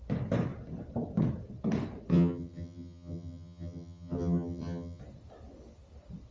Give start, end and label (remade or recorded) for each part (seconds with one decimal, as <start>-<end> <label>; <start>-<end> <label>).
0.0-2.1 recorded; 2.1-5.0 remade; 5.0-6.3 recorded